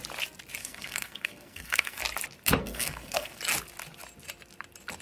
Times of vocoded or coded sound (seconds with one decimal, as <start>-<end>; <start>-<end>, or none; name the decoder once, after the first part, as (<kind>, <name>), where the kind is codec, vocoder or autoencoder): 0.6-2.0 (codec, SNAC); 2.6-3.4